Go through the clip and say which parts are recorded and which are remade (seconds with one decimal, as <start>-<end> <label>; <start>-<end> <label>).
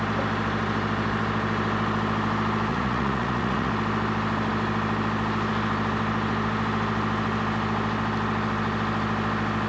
0.0-2.7 recorded; 2.7-3.7 remade; 3.7-9.7 recorded